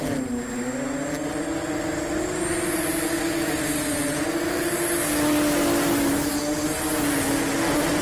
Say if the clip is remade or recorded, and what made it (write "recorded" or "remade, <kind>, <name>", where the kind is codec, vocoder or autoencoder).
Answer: recorded